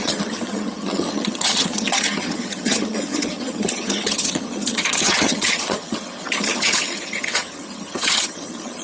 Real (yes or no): no